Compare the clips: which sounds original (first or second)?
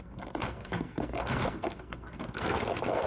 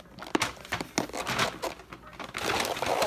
second